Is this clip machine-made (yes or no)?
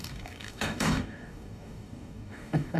yes